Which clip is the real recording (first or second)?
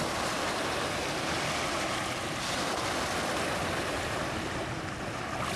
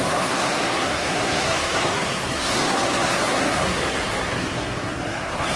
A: first